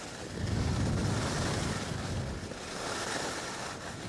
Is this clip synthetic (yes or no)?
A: no